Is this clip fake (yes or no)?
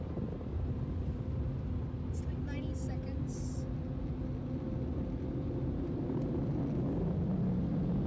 no